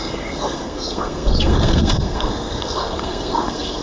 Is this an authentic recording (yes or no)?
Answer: no